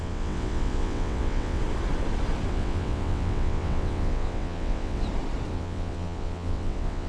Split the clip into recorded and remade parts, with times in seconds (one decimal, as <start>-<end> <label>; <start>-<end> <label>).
0.0-1.6 remade; 1.6-2.5 recorded; 2.5-5.0 remade; 5.0-5.5 recorded; 5.5-7.1 remade